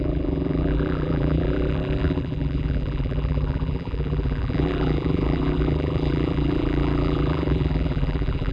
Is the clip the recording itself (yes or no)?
no